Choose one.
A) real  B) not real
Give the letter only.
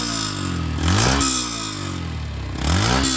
A